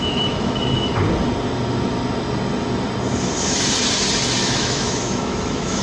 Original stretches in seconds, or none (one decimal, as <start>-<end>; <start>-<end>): 0.9-4.4